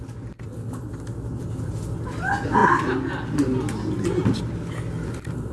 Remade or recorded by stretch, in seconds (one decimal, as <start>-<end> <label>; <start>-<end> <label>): 0.0-5.5 recorded